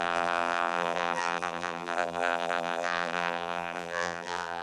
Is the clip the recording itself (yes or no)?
no